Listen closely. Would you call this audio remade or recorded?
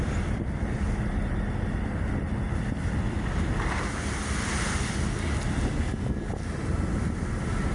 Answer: recorded